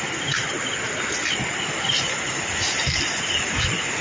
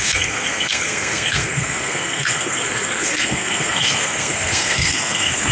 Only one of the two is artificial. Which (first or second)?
second